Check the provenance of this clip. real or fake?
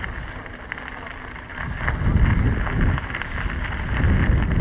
real